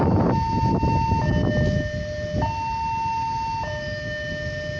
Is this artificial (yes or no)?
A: no